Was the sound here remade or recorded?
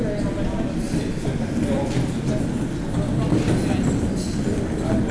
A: recorded